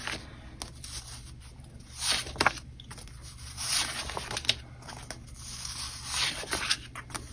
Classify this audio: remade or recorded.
recorded